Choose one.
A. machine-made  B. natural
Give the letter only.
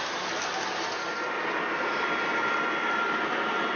B